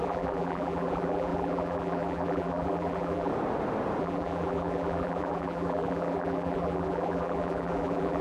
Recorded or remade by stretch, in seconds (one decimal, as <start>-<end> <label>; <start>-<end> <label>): 0.0-3.3 remade; 3.3-4.0 recorded; 4.0-8.2 remade